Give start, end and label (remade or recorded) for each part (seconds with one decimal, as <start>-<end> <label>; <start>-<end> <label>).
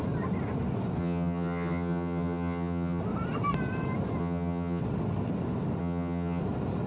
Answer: 0.0-1.0 recorded; 1.0-3.0 remade; 3.0-4.2 recorded; 4.2-4.8 remade; 4.8-5.8 recorded; 5.8-6.4 remade; 6.4-6.9 recorded